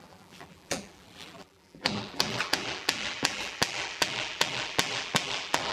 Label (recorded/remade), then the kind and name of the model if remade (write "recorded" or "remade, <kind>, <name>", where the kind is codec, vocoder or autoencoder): remade, vocoder, BigVGAN v2